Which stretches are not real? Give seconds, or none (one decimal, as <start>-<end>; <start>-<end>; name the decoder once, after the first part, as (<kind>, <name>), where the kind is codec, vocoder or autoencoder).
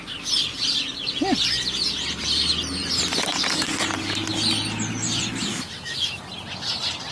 5.5-6.2 (autoencoder, DAC-VAE)